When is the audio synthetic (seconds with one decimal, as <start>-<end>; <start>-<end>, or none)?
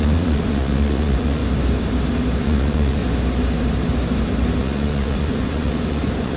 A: 0.0-1.4; 2.4-3.0; 4.6-6.4